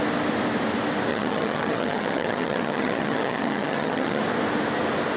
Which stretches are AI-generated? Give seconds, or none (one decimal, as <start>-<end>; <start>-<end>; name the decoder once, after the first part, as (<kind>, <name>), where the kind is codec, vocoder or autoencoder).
1.1-4.2 (vocoder, HiFi-GAN)